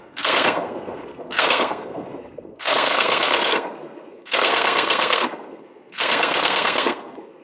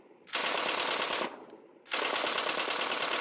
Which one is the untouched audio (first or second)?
second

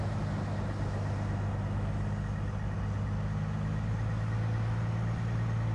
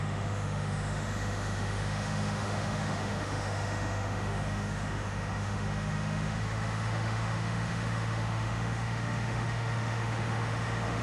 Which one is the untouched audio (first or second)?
first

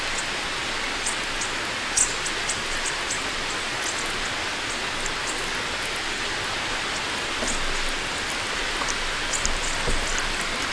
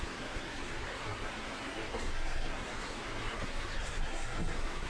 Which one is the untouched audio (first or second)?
first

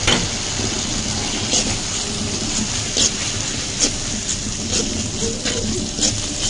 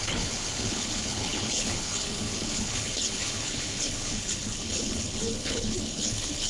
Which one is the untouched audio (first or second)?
first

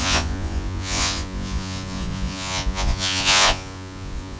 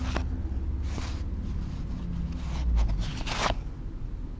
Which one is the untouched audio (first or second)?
second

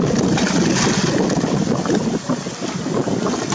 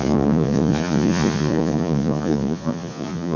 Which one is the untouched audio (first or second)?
first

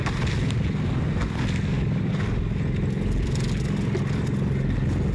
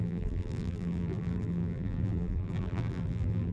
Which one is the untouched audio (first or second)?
first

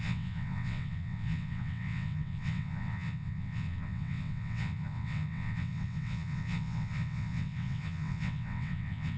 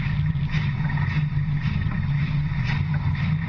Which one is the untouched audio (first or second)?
second